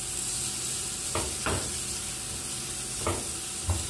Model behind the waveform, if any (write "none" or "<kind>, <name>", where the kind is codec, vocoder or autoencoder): none